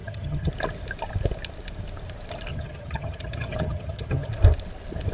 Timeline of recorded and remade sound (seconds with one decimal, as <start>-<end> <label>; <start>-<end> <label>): 0.0-0.5 remade; 0.5-2.5 recorded; 2.5-4.3 remade; 4.3-5.1 recorded